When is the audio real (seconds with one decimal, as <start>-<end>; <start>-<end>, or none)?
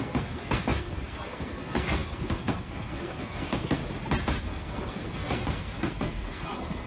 3.8-4.4